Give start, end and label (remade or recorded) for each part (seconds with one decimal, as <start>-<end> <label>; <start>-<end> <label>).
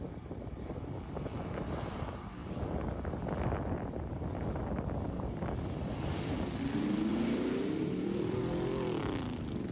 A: 0.0-2.4 recorded; 2.4-5.6 remade; 5.6-7.1 recorded; 7.1-9.7 remade